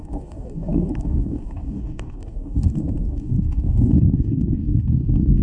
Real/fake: fake